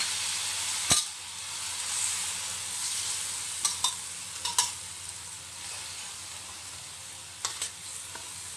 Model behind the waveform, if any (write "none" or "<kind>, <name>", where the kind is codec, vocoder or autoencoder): none